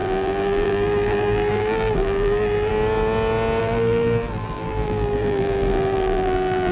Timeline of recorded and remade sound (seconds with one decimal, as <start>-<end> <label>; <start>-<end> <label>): 0.0-2.7 remade; 2.7-3.6 recorded; 3.6-6.7 remade